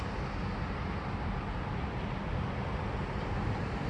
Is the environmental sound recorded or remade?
recorded